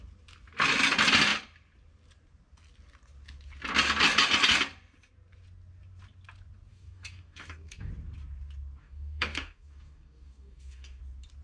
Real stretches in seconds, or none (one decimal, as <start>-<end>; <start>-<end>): 0.0-6.7; 7.9-8.8; 11.0-11.4